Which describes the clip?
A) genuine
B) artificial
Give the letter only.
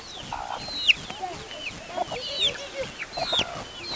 A